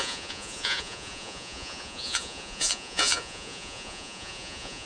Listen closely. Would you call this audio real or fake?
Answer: fake